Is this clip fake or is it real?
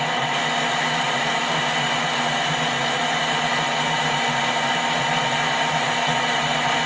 real